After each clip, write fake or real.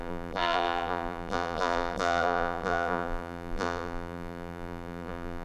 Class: fake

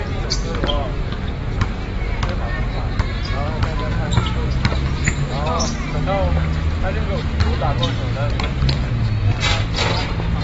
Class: real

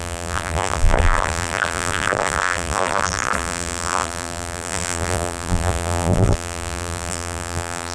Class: fake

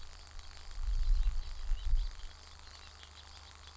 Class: real